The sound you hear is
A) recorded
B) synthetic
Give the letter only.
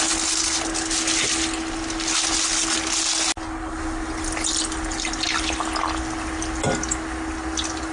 A